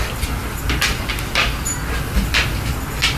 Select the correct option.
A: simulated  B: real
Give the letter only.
B